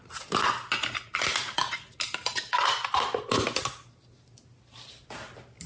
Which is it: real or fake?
real